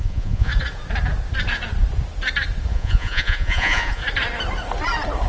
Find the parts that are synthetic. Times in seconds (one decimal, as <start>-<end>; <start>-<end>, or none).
0.0-0.5; 2.7-4.0